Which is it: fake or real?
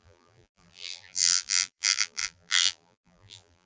fake